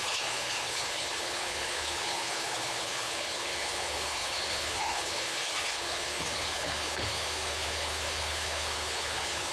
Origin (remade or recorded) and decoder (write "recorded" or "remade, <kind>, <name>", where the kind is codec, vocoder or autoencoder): remade, codec, HILCodec